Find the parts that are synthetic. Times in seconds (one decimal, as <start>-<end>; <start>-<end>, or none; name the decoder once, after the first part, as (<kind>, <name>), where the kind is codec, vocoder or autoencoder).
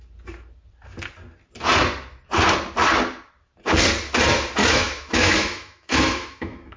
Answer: 4.6-6.8 (autoencoder, DAC-VAE)